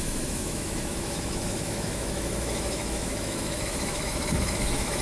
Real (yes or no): no